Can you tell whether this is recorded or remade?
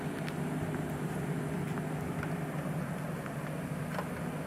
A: recorded